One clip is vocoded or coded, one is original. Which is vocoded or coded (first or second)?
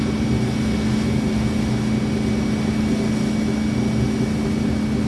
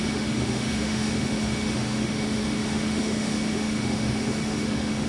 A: second